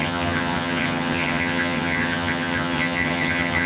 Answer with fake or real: fake